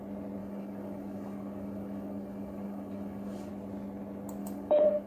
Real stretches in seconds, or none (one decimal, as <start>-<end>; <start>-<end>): 0.0-0.4; 3.5-4.4